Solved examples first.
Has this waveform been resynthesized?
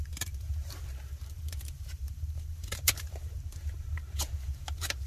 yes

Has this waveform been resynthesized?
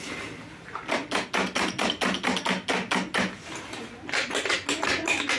no